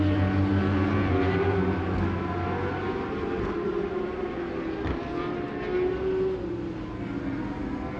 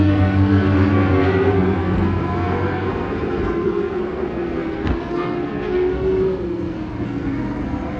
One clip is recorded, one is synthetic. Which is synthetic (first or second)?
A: second